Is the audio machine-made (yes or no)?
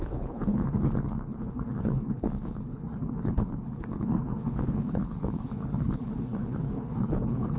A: yes